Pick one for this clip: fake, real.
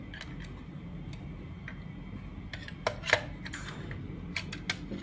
real